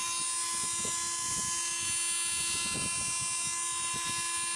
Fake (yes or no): no